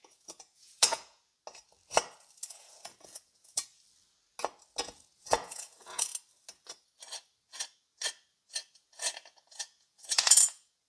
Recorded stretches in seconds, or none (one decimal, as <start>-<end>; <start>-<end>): 1.3-2.5; 3.7-4.8; 6.1-8.7